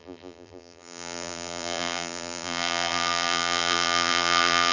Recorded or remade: remade